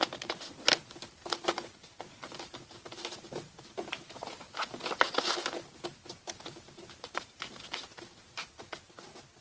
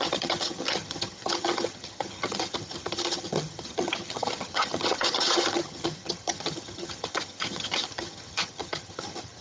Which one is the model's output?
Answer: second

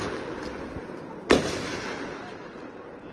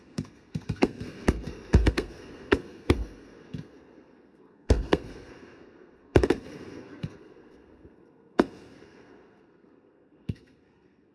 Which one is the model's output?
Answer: second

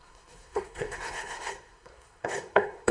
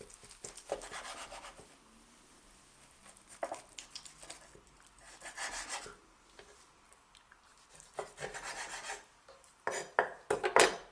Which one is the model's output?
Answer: first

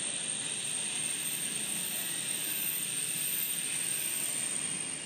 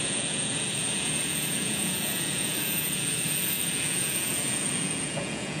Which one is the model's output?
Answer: second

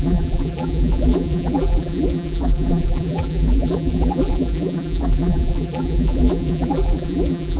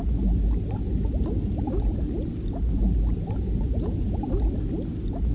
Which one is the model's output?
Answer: first